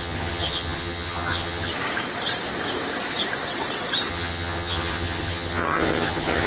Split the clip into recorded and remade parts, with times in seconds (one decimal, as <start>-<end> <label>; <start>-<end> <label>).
0.0-1.7 remade; 1.7-4.1 recorded; 4.1-6.5 remade